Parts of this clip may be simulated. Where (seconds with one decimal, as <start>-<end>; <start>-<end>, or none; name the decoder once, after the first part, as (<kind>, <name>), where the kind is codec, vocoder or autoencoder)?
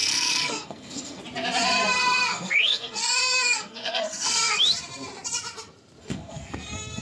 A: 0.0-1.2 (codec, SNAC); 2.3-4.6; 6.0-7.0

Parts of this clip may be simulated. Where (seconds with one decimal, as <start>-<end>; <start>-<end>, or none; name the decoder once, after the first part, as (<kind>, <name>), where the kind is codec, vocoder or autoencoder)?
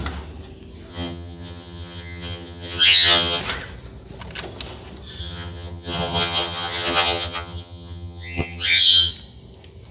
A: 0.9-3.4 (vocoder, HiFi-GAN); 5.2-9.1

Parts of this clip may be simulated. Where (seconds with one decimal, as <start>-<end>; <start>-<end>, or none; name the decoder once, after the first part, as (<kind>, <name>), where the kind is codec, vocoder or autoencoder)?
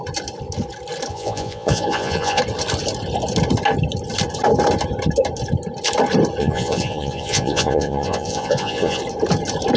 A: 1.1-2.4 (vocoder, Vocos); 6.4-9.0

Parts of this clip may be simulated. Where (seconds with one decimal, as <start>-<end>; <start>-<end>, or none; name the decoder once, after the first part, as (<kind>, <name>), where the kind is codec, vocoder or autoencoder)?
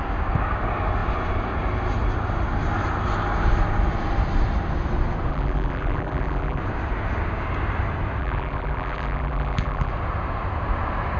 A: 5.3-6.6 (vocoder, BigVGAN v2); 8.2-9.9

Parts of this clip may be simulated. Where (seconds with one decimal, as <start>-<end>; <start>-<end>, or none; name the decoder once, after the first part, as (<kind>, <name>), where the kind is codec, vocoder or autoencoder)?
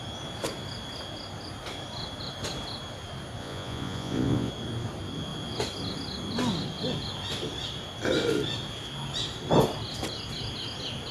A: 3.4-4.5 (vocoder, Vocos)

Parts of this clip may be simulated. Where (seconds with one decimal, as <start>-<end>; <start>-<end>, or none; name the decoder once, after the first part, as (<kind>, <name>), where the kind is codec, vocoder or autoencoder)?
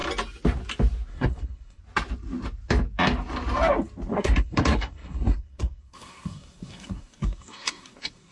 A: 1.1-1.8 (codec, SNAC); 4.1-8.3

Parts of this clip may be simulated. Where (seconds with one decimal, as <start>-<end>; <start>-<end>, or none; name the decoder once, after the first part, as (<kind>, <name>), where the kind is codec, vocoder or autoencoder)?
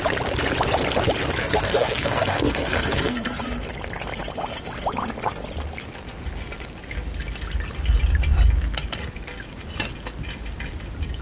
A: 1.4-3.4 (codec, SNAC)